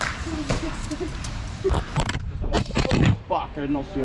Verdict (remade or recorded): remade